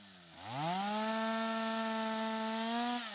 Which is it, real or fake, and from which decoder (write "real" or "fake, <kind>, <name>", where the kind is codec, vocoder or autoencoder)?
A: real